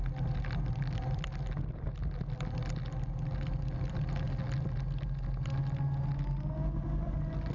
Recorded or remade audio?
recorded